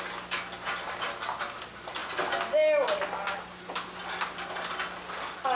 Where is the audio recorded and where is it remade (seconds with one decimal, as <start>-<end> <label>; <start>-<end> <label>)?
0.0-5.6 recorded